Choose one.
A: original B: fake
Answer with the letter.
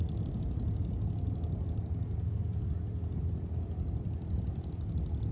A